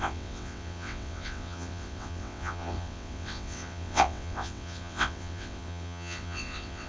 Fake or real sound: fake